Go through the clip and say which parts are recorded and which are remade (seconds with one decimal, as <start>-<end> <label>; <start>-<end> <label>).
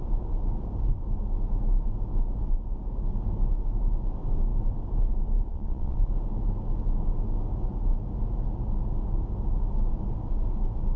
0.0-5.5 recorded; 5.5-6.1 remade; 6.1-11.0 recorded